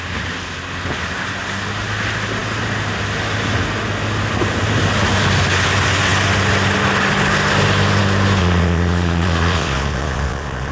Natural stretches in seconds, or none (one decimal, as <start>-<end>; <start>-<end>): 0.0-8.4